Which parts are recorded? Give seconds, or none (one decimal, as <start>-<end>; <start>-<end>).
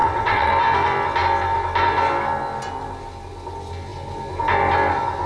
0.5-5.3